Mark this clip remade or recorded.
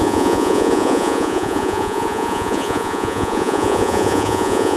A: remade